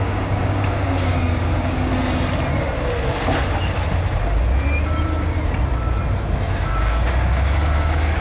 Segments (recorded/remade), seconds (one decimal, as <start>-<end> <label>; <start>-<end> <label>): 0.0-1.9 remade; 1.9-6.5 recorded; 6.5-8.2 remade